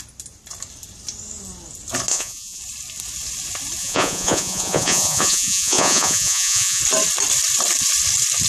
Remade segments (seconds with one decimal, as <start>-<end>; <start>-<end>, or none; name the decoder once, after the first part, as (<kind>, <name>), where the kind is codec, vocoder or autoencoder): 2.1-2.6 (vocoder, Vocos); 3.8-6.8